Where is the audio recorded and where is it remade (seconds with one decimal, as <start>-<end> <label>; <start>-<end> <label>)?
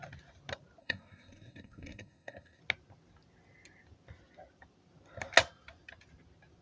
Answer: 0.0-0.8 recorded; 0.8-2.6 remade; 2.6-6.6 recorded